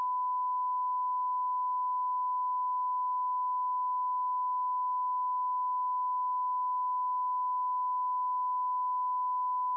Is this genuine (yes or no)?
yes